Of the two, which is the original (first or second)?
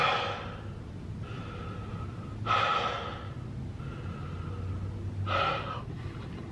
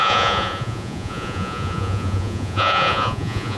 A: first